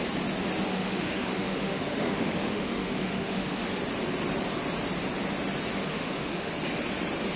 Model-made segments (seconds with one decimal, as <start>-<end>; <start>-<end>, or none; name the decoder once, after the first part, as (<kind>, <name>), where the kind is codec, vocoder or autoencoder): 0.7-3.7 (autoencoder, DAC-VAE); 5.9-6.5